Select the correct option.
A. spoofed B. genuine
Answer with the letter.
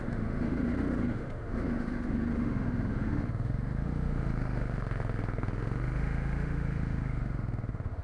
A